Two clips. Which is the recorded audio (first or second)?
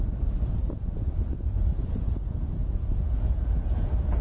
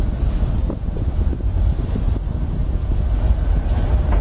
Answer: second